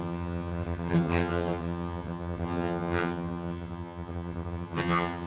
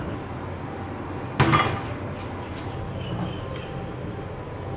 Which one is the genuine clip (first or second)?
second